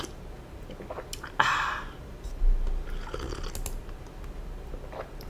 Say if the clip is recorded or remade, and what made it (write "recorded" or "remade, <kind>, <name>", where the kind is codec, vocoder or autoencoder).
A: recorded